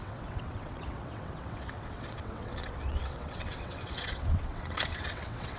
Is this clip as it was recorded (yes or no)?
no